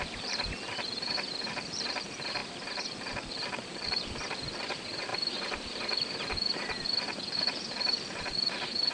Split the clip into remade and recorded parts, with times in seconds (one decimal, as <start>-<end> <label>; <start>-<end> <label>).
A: 0.0-8.9 remade